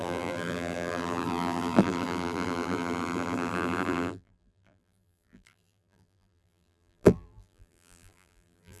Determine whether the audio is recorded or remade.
remade